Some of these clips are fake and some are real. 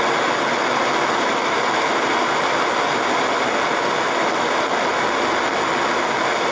real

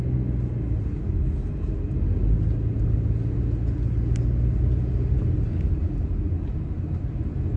real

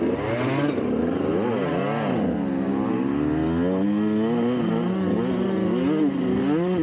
real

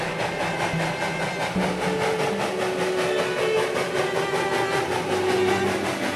real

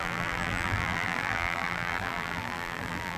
fake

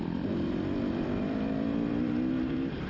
fake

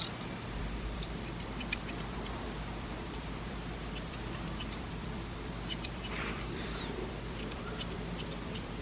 fake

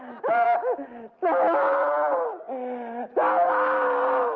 real